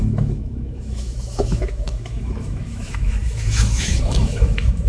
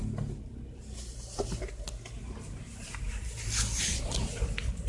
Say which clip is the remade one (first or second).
first